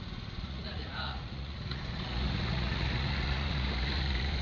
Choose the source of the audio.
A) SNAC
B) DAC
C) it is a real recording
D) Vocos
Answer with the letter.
D